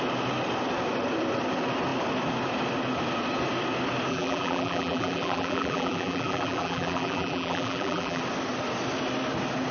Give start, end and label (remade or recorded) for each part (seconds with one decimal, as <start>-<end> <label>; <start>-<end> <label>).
0.0-4.1 recorded; 4.1-8.2 remade; 8.2-9.7 recorded